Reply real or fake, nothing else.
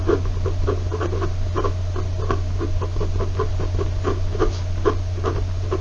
real